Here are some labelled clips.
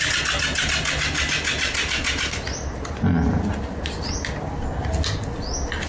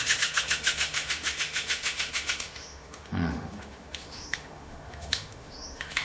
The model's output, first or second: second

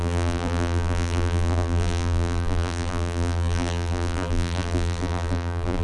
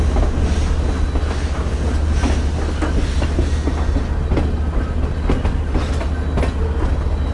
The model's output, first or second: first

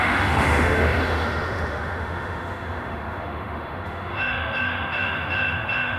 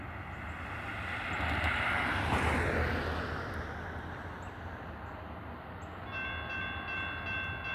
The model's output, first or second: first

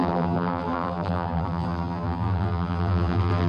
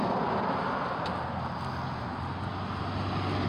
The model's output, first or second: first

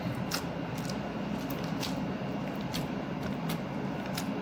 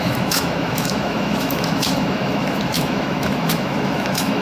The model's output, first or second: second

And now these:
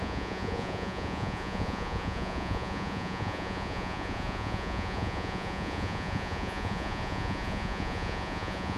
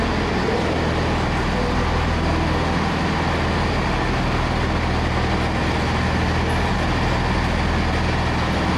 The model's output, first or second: first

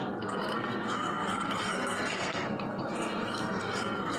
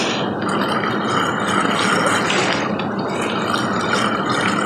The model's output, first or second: first